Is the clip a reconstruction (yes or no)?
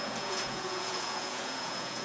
yes